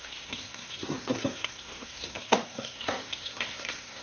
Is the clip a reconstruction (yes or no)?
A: yes